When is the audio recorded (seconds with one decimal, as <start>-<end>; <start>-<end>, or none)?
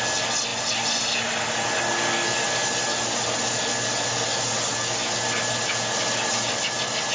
0.0-7.1